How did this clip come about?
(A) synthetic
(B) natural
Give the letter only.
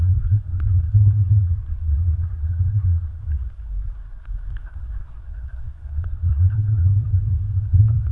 A